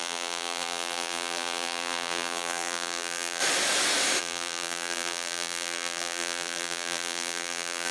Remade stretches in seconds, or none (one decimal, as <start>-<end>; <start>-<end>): 0.0-3.4; 4.2-7.9